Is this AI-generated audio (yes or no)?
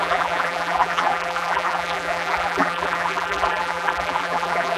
yes